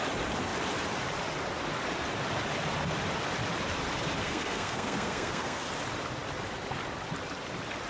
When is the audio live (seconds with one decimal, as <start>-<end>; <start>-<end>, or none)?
0.0-4.2; 5.7-7.9